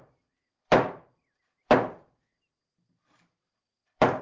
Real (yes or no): no